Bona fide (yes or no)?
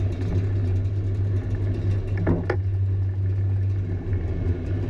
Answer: yes